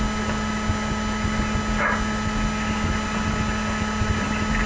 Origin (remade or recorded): recorded